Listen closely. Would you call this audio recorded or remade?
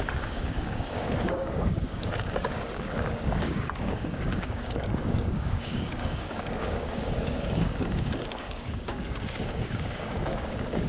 remade